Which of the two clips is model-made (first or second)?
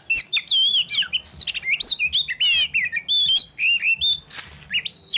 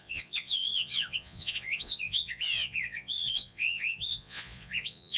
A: second